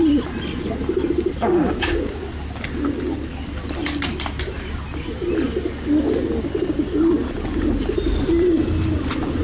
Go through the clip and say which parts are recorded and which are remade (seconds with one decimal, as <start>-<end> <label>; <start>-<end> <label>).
0.0-1.4 recorded; 1.4-2.2 remade; 2.2-9.4 recorded